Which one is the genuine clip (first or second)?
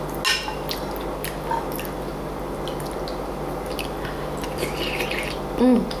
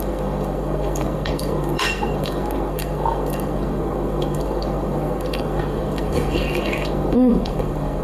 first